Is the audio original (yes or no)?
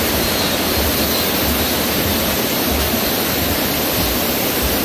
yes